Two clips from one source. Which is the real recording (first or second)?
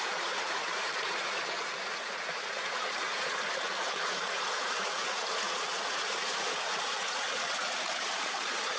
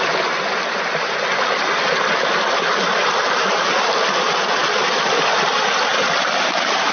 second